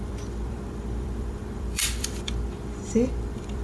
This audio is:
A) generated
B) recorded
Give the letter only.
A